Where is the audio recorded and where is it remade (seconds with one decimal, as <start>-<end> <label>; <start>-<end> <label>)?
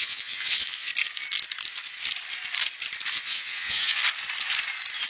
0.0-0.9 remade; 0.9-3.1 recorded; 3.1-4.0 remade; 4.0-5.1 recorded